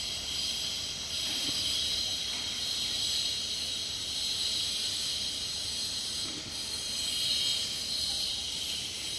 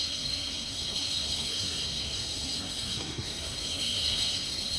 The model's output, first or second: second